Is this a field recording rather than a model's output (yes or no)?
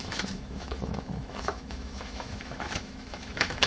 no